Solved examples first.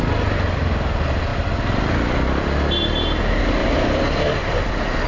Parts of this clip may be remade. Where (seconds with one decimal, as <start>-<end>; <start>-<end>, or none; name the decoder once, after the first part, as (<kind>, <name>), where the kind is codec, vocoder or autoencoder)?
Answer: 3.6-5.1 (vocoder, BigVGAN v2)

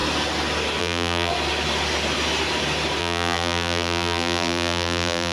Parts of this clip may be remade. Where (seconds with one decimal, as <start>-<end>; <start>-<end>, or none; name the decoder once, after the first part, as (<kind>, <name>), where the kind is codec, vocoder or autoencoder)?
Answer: 0.8-1.3 (vocoder, BigVGAN v2); 3.0-5.3

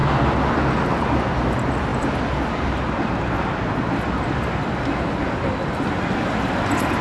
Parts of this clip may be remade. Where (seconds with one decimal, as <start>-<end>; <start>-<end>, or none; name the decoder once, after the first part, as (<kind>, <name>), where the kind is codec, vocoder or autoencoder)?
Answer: 1.4-1.9 (vocoder, BigVGAN v2); 6.1-7.0

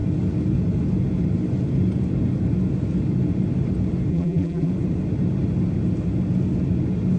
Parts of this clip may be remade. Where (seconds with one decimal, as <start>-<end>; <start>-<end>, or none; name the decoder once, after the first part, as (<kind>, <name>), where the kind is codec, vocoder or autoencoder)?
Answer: 4.1-4.7 (vocoder, BigVGAN v2)

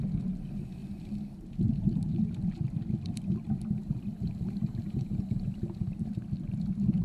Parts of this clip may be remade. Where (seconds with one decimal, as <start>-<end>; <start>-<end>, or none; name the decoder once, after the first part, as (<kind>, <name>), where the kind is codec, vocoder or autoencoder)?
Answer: none

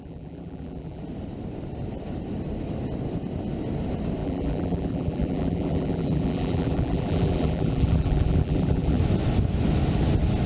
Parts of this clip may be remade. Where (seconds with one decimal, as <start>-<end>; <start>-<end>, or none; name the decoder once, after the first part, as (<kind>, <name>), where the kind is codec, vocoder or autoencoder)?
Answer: 0.0-1.0 (vocoder, BigVGAN v2); 4.2-9.0

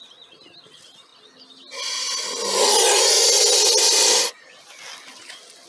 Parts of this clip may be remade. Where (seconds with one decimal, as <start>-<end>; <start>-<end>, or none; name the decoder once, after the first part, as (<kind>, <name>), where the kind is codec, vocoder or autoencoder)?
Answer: none

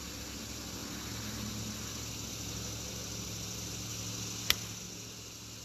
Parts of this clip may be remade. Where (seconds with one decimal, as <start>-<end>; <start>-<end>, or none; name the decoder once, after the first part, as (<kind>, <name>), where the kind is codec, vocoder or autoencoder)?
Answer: none